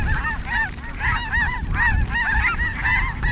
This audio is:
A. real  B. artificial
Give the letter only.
A